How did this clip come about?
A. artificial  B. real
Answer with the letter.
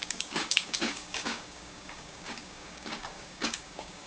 A